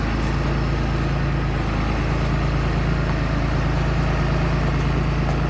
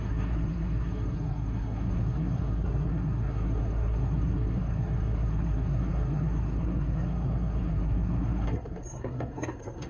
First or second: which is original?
first